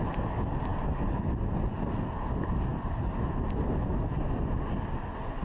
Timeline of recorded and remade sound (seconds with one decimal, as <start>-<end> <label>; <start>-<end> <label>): 0.0-5.4 recorded